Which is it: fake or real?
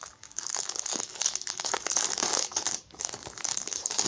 fake